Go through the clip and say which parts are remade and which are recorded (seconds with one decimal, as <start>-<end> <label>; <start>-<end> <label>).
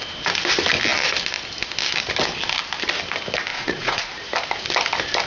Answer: 0.0-3.5 recorded; 3.5-4.1 remade; 4.1-5.3 recorded